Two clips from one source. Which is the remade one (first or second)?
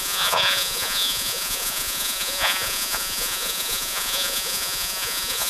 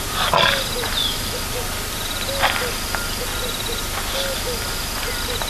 first